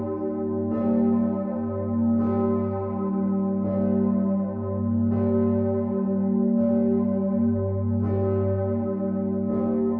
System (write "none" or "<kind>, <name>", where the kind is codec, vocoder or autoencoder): none